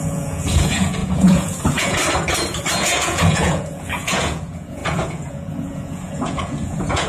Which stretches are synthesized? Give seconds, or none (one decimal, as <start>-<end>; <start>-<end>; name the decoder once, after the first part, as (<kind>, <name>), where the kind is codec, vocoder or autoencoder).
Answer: 0.0-2.0 (vocoder, Vocos); 2.8-7.1